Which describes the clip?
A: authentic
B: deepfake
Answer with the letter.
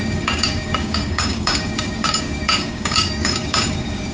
B